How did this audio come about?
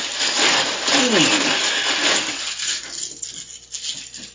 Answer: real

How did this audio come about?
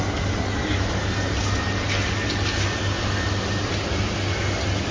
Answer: real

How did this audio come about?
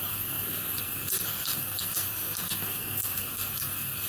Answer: fake